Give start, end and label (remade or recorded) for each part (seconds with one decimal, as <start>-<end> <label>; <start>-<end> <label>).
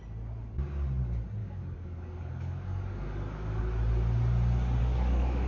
0.0-1.4 recorded; 1.4-3.6 remade; 3.6-4.8 recorded; 4.8-5.5 remade